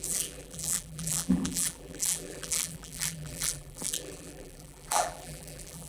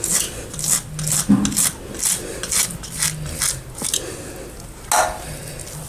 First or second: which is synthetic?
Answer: first